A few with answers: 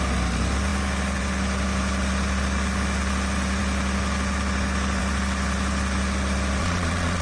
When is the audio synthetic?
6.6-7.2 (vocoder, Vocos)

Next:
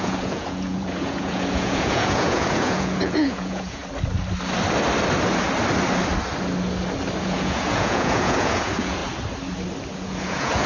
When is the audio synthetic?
0.0-3.8 (vocoder, Vocos); 7.2-9.0; 9.9-10.7